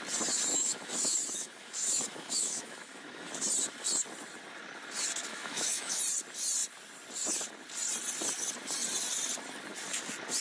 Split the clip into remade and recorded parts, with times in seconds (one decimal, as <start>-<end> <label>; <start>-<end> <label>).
0.0-0.5 recorded; 0.5-3.3 remade; 3.3-5.3 recorded; 5.3-6.0 remade; 6.0-10.4 recorded